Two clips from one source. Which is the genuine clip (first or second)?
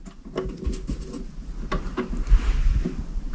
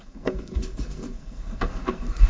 first